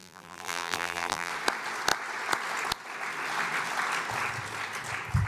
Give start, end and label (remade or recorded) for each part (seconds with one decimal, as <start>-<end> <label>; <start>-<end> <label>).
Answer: 0.0-1.3 remade; 1.3-5.3 recorded